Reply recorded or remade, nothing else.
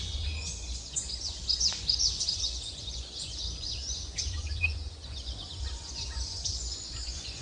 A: remade